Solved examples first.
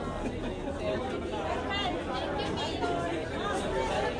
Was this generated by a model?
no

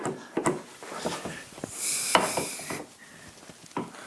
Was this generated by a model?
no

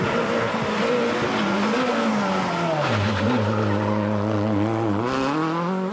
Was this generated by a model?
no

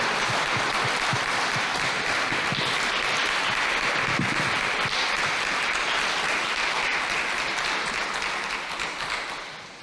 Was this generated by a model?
no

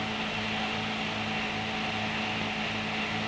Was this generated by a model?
no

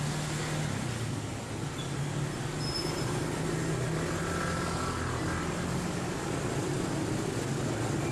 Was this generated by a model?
no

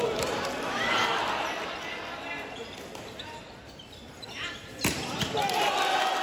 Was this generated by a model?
no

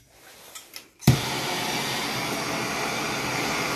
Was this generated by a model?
no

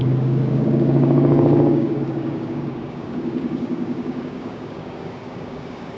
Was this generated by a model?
yes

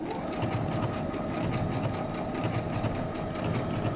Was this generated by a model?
no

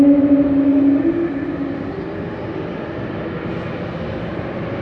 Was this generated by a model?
no